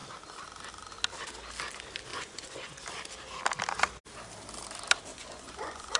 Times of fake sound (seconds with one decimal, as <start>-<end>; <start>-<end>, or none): 2.1-2.8; 5.1-6.0